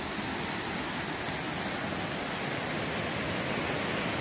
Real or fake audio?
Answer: real